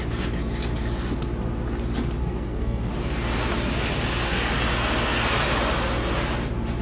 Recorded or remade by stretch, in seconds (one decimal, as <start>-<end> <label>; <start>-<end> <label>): 0.0-2.2 recorded; 2.2-2.9 remade; 2.9-6.8 recorded